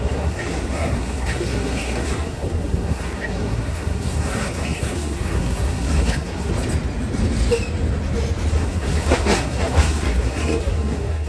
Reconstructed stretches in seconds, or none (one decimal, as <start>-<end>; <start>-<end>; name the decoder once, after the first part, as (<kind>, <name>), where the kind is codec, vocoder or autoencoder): 0.0-6.5 (codec, SNAC); 8.5-11.3